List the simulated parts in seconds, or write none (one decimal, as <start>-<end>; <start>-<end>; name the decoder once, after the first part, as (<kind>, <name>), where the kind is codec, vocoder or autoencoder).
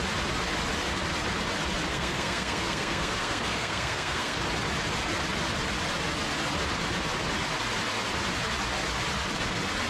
1.9-4.4 (codec, SNAC)